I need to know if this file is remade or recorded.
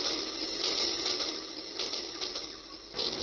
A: recorded